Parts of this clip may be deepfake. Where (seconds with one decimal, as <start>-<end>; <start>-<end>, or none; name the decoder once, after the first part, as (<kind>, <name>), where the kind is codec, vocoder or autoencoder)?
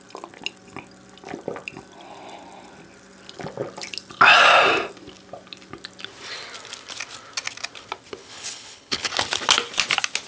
8.2-9.1 (codec, HILCodec)